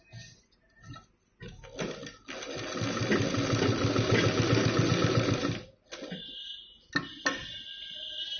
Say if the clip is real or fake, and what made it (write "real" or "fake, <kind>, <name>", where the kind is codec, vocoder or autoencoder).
real